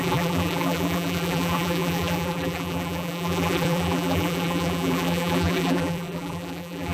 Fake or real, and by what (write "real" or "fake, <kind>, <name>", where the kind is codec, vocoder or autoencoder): fake, vocoder, BigVGAN v2